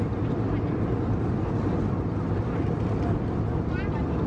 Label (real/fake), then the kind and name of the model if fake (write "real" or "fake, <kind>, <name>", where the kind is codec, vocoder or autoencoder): real